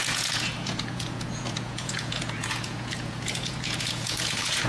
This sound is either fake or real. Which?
fake